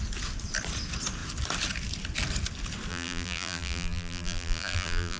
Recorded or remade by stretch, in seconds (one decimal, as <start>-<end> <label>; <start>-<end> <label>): 0.0-2.9 recorded; 2.9-5.2 remade